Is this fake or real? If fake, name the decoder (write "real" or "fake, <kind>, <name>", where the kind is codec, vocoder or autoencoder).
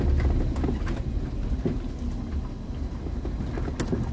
real